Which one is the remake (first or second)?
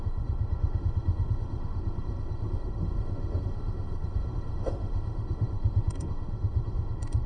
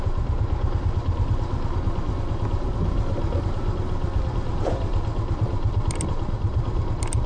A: first